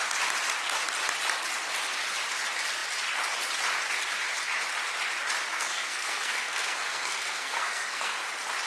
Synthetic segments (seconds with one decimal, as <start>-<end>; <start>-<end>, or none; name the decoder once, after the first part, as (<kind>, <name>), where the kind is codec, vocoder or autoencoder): 5.5-8.2 (codec, SNAC)

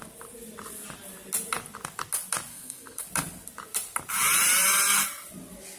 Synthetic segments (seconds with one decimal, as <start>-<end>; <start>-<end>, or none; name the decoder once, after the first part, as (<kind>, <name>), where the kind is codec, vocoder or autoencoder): 2.5-3.0 (codec, SNAC)

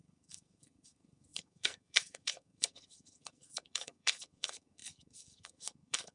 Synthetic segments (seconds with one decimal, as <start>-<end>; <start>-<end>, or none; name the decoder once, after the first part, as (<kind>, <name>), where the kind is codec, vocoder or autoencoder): 0.0-6.1 (codec, SNAC)

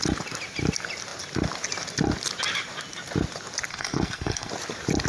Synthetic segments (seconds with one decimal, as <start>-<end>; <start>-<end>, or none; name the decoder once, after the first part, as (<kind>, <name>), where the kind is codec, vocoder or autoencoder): 3.7-4.5 (codec, SNAC)

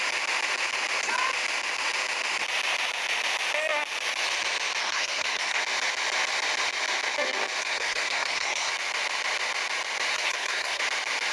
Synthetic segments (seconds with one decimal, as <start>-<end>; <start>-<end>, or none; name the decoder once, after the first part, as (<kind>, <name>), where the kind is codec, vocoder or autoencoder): 4.8-5.6 (codec, SNAC); 7.6-8.7; 10.1-10.8